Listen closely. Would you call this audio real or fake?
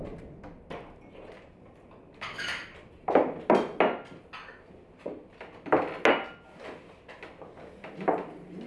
real